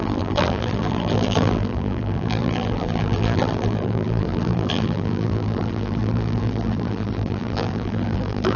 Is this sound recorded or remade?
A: remade